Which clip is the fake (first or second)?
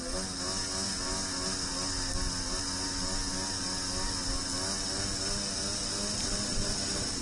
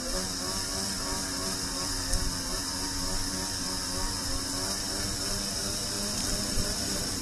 second